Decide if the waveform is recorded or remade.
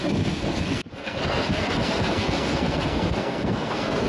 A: remade